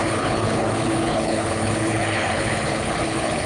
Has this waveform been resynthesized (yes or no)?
yes